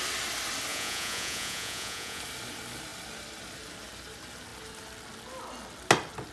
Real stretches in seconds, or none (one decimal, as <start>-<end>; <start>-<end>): 0.0-0.7; 2.2-6.3